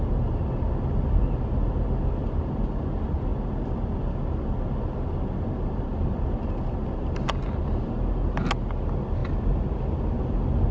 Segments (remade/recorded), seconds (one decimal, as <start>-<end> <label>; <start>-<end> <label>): 0.0-10.7 recorded